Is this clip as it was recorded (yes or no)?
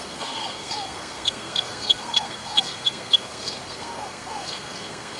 no